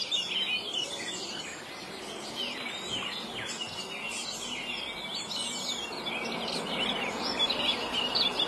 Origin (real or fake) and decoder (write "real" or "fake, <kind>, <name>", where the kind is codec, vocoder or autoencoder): real